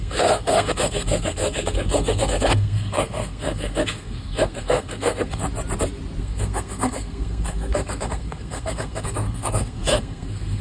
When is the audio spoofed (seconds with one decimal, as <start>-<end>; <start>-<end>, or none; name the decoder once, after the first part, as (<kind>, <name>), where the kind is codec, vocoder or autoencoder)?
0.0-5.4 (codec, SNAC); 6.2-10.6